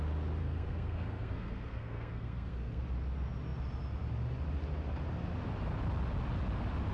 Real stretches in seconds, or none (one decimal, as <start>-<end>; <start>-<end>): 0.0-0.4; 2.8-6.9